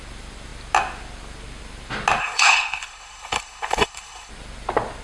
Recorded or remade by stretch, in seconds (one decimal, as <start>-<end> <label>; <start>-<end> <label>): 0.0-2.2 recorded; 2.2-4.3 remade; 4.3-5.0 recorded